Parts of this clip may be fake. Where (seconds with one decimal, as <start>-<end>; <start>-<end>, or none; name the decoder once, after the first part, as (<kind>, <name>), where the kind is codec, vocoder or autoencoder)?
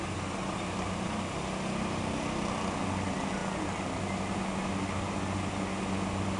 none